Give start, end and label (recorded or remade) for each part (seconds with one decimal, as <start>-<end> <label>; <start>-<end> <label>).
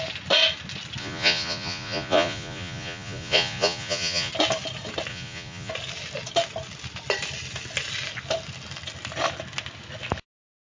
0.0-1.0 recorded; 1.0-4.3 remade; 4.3-5.1 recorded; 5.1-5.7 remade; 5.7-10.7 recorded